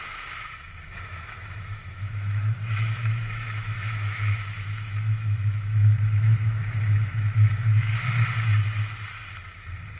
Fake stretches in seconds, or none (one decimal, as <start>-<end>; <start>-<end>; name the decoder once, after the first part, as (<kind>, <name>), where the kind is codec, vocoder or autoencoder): 0.0-7.9 (autoencoder, DAC-VAE)